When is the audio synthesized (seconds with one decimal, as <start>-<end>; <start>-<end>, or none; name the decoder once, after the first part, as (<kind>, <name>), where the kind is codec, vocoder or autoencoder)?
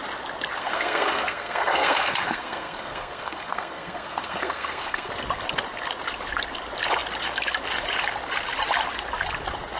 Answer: 0.6-5.1 (codec, SNAC)